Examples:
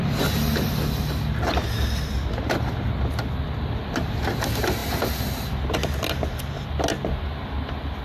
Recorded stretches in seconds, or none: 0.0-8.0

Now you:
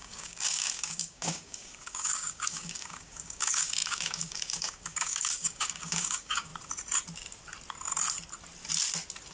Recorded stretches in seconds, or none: 6.5-9.3

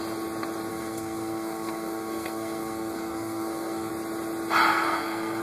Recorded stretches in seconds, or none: 0.0-0.7; 3.9-4.7

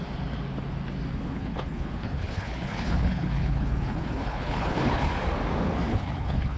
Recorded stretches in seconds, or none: 0.0-1.1; 5.1-5.9

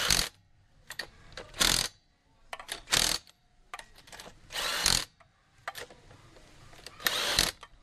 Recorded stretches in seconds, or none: 0.0-3.4; 4.3-7.8